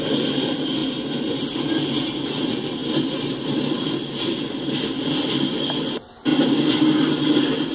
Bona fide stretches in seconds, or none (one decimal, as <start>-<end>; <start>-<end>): 0.0-6.3; 6.9-7.7